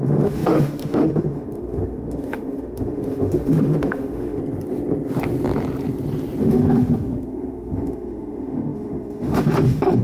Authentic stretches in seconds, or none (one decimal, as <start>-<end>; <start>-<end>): 4.4-6.4